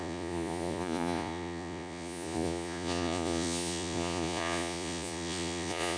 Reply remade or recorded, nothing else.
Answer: remade